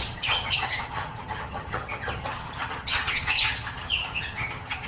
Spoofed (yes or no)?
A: yes